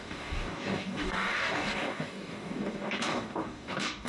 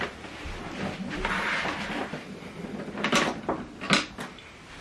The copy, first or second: first